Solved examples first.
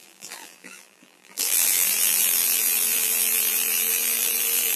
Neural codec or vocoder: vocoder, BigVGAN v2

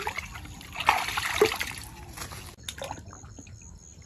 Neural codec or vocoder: none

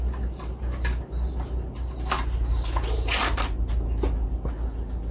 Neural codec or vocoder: none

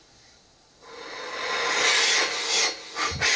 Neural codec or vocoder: none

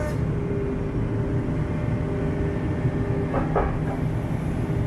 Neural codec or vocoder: none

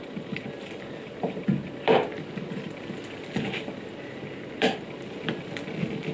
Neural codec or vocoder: none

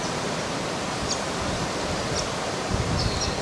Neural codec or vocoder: none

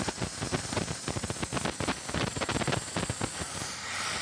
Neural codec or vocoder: none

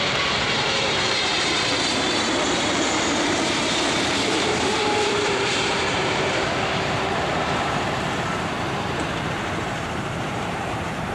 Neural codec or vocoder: vocoder, BigVGAN v2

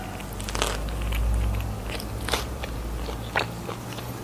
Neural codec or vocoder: none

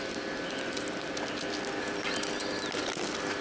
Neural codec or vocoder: none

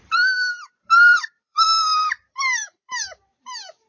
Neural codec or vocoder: vocoder, BigVGAN v2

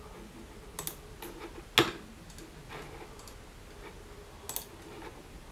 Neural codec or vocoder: none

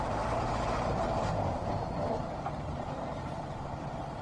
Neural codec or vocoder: vocoder, BigVGAN v2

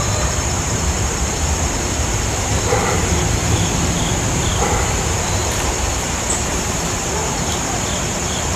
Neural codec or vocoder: vocoder, BigVGAN v2